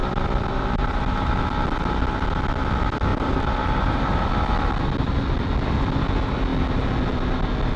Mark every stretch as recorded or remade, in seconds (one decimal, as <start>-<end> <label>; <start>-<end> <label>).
0.0-1.3 remade; 1.3-3.1 recorded; 3.1-4.3 remade; 4.3-7.8 recorded